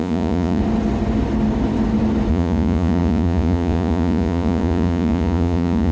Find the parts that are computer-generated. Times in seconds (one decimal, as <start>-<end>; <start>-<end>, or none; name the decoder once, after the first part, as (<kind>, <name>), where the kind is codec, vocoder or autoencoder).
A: 0.0-0.6 (vocoder, Vocos); 2.3-5.9